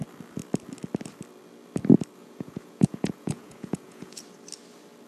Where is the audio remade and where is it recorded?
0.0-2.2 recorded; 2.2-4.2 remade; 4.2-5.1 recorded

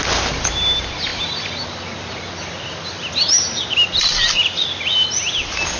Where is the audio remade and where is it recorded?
0.0-5.8 recorded

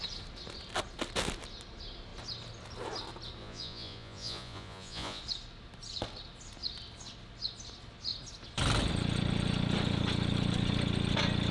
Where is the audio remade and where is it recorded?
0.0-3.4 recorded; 3.4-5.2 remade; 5.2-11.5 recorded

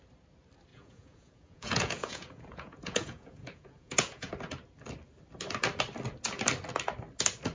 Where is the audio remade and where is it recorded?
0.0-0.7 recorded; 0.7-4.3 remade; 4.3-7.5 recorded

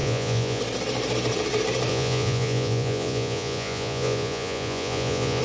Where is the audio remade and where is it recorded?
0.0-0.6 remade; 0.6-1.9 recorded; 1.9-5.4 remade

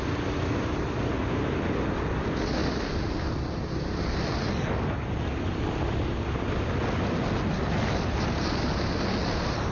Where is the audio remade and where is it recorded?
0.0-9.7 recorded